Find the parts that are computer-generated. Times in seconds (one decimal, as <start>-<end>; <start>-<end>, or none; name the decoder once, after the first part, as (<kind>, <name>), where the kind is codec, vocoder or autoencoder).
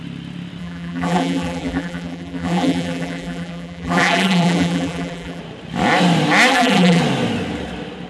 0.6-5.4 (vocoder, BigVGAN v2); 6.5-7.0